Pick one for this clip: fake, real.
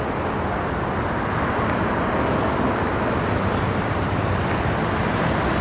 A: real